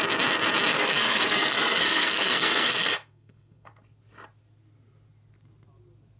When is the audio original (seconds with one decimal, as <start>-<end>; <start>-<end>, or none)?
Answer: 0.0-0.7; 3.7-6.2